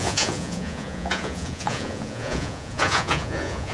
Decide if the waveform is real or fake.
fake